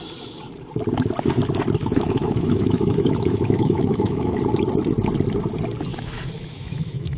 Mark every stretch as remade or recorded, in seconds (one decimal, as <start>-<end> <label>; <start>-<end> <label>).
0.0-1.8 recorded; 1.8-4.4 remade; 4.4-5.9 recorded; 5.9-7.2 remade